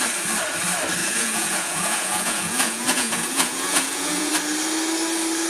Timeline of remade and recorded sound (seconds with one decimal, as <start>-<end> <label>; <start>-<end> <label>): 0.0-1.0 recorded; 1.0-4.3 remade; 4.3-5.5 recorded